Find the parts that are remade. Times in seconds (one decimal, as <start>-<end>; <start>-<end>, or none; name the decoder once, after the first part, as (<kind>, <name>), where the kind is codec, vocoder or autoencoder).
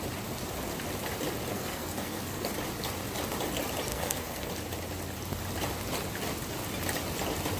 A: 1.5-2.5 (codec, SNAC); 3.9-4.5